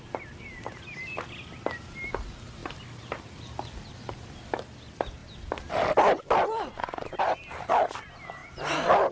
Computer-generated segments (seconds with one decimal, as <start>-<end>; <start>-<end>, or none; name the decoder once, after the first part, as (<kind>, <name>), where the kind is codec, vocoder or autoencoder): 5.2-7.2 (vocoder, BigVGAN v2); 8.4-9.1